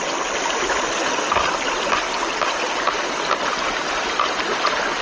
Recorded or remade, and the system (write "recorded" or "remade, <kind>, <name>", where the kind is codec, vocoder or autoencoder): recorded